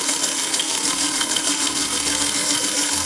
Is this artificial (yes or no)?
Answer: yes